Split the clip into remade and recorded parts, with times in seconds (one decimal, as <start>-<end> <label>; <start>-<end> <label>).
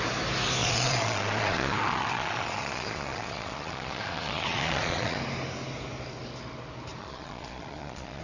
0.0-0.6 recorded; 0.6-5.2 remade; 5.2-7.0 recorded; 7.0-8.2 remade